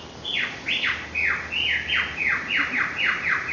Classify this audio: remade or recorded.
recorded